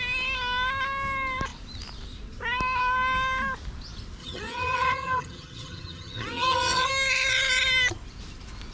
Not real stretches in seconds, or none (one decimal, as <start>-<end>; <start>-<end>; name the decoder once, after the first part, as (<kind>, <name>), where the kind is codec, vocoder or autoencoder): 4.2-6.9 (vocoder, HiFi-GAN)